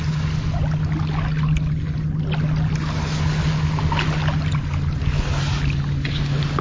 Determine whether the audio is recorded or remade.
recorded